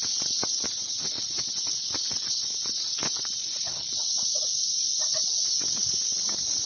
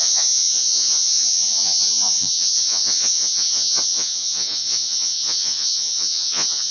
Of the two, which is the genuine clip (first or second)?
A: first